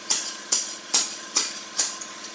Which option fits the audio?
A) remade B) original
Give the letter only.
A